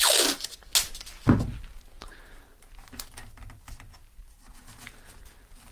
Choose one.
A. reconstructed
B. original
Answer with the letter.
B